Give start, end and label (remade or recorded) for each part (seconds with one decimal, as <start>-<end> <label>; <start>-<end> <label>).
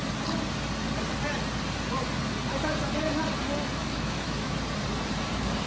0.0-3.8 recorded; 3.8-4.5 remade; 4.5-5.7 recorded